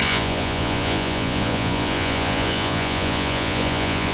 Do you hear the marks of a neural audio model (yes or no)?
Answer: yes